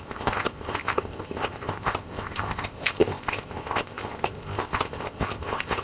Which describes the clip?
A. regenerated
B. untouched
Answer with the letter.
A